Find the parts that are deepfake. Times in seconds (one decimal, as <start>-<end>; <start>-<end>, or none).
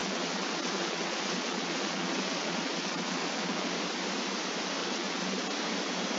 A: 0.0-3.7; 4.8-5.4